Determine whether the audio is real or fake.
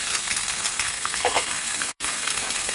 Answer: fake